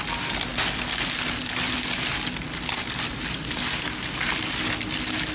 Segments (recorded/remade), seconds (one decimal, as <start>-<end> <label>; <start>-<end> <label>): 0.0-5.3 recorded